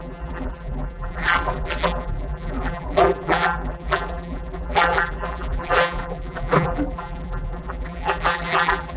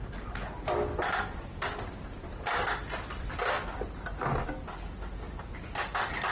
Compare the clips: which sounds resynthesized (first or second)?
first